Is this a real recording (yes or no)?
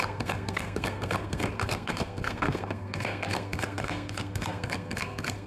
no